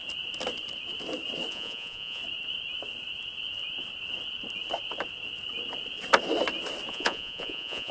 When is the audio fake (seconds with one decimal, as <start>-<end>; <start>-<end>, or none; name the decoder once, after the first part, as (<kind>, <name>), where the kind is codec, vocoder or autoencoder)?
1.5-2.2 (vocoder, Vocos); 6.9-7.9